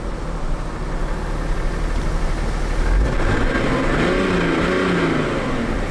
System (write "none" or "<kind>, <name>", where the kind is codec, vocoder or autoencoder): none